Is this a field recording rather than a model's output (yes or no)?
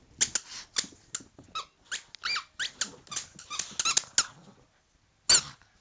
yes